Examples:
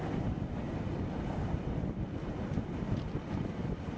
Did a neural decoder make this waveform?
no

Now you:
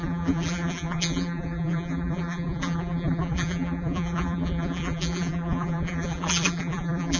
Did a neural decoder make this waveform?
yes